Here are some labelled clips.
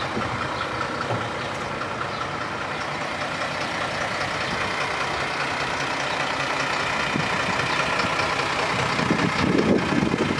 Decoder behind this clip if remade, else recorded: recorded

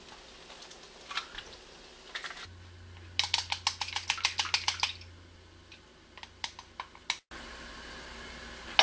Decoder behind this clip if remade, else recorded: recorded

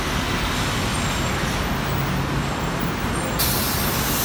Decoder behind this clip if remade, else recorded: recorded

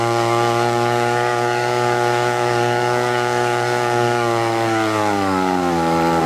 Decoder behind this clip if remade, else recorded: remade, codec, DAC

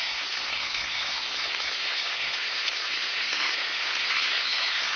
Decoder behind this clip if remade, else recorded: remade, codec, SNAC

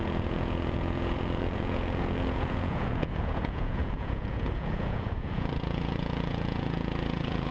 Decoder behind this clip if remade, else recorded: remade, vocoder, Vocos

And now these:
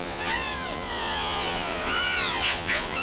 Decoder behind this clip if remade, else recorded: remade, vocoder, Vocos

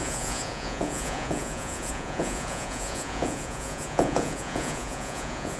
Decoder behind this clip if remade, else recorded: remade, vocoder, Vocos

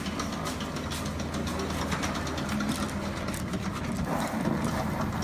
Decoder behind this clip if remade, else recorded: recorded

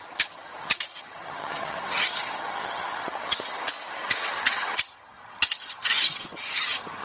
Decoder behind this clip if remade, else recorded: remade, vocoder, HiFi-GAN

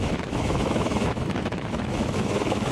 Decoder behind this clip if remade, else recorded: remade, autoencoder, DAC-VAE